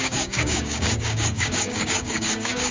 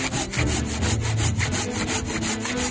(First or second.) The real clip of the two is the second